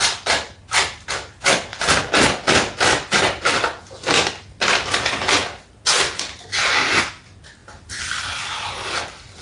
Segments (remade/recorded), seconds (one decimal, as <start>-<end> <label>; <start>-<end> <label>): 0.0-9.4 recorded